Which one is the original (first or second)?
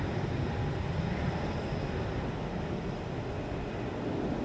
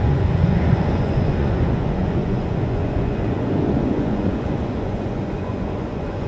first